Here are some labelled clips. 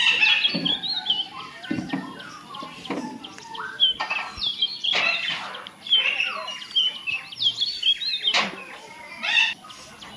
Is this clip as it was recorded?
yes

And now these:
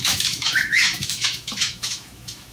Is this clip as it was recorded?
no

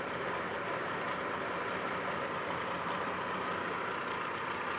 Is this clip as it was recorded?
no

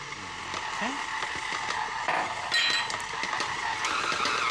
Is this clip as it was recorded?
yes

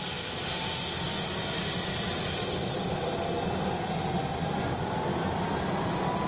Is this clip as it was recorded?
yes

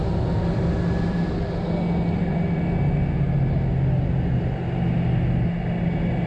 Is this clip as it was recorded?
yes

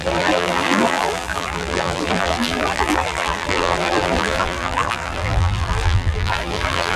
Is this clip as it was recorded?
no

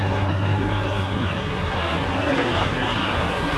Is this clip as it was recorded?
no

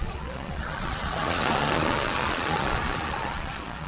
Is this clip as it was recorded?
no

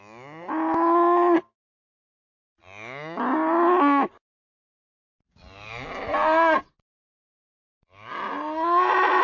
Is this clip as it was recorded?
yes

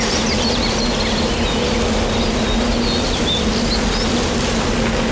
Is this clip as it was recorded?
yes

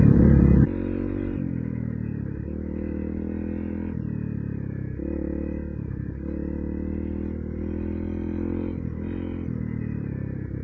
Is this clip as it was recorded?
yes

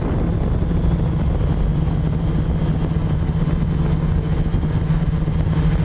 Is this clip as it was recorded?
yes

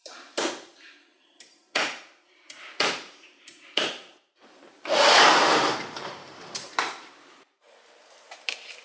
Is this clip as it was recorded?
no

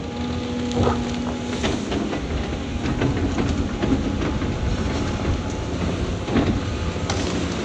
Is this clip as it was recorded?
yes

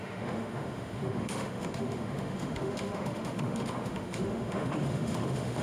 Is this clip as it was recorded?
no